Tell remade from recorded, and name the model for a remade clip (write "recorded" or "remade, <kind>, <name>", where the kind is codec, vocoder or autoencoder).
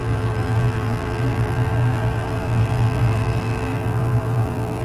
remade, vocoder, BigVGAN v2